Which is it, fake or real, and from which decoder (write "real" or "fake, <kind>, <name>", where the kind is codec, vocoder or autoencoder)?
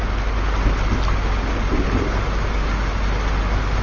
real